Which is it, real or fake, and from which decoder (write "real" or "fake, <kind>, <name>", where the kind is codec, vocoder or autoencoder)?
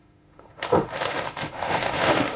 fake, autoencoder, DAC-VAE